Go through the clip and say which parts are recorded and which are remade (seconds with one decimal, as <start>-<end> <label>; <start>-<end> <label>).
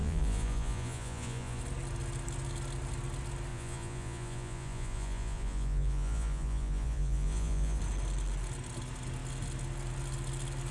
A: 0.0-1.6 remade; 1.6-3.5 recorded; 3.5-7.8 remade; 7.8-10.7 recorded